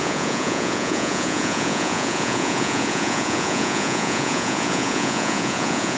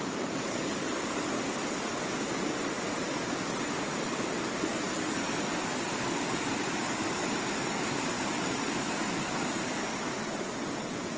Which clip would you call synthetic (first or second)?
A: first